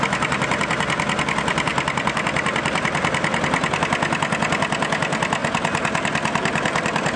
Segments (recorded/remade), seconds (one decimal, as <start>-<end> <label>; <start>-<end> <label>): 0.0-1.7 recorded; 1.7-3.8 remade; 3.8-5.4 recorded; 5.4-7.2 remade